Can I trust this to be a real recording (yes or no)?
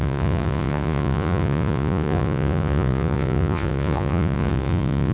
no